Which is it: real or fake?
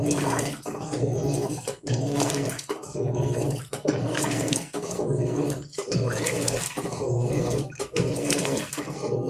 fake